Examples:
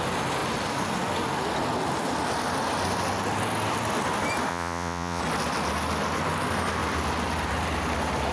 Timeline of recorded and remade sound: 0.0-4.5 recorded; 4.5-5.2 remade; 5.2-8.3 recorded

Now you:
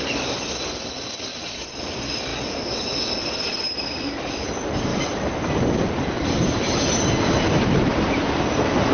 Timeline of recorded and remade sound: 0.0-1.3 recorded; 1.3-1.8 remade; 1.8-4.9 recorded; 4.9-8.9 remade

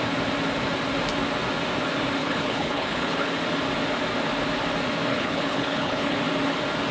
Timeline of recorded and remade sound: 0.0-2.2 recorded; 2.2-3.3 remade; 3.3-5.1 recorded; 5.1-6.2 remade; 6.2-6.9 recorded

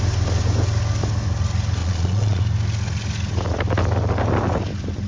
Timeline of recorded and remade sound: 0.0-1.8 recorded; 1.8-2.4 remade; 2.4-5.1 recorded

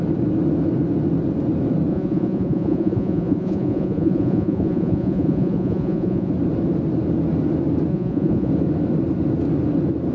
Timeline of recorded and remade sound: 0.0-1.9 recorded; 1.9-6.3 remade; 6.3-7.9 recorded; 7.9-8.5 remade; 8.5-10.1 recorded